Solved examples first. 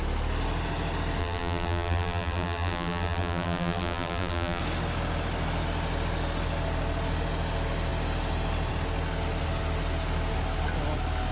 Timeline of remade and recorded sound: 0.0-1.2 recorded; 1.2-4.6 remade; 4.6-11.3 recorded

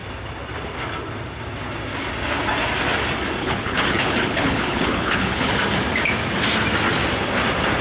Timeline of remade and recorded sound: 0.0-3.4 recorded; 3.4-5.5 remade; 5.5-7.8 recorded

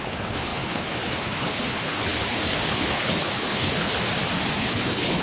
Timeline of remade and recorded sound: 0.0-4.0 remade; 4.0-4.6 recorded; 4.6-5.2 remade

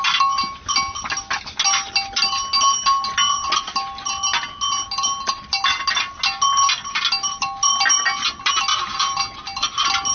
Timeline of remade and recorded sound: 0.0-8.7 recorded; 8.7-9.2 remade; 9.2-10.1 recorded

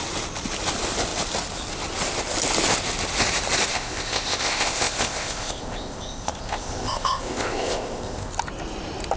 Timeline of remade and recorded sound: 0.0-3.7 recorded; 3.7-8.3 remade; 8.3-9.2 recorded

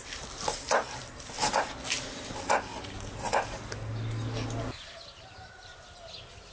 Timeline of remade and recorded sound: 0.0-6.5 recorded

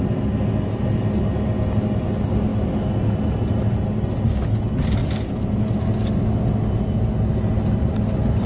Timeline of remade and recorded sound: 0.0-8.5 recorded